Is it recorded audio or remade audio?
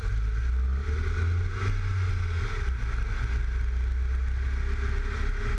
recorded